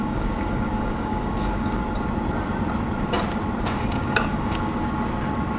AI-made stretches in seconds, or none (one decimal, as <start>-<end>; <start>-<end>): 0.0-1.8; 3.6-4.7